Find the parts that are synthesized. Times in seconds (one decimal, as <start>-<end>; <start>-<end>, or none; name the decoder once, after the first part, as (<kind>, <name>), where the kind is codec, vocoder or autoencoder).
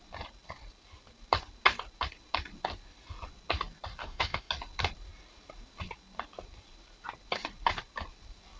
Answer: 4.0-4.5 (autoencoder, DAC-VAE)